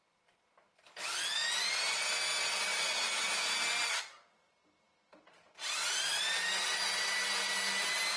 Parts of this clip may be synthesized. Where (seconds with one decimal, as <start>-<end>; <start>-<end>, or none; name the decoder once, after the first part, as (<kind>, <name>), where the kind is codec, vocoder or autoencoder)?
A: none